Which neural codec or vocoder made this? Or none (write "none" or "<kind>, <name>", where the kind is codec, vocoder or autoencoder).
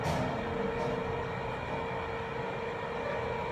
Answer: none